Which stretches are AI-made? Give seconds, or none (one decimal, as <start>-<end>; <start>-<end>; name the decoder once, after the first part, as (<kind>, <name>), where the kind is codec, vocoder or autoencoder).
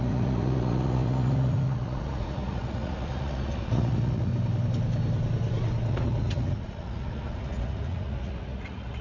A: 0.0-4.3 (vocoder, Vocos); 5.9-9.0